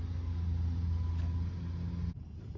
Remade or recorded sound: recorded